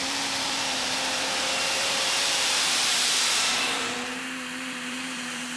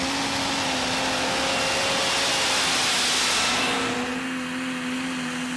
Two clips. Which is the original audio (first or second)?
second